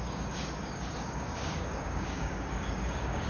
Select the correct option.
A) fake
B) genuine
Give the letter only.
A